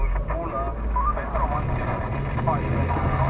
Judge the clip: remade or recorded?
recorded